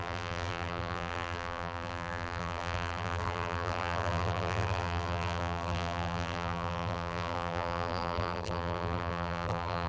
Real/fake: fake